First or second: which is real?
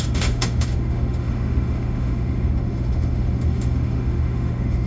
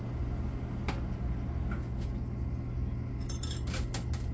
second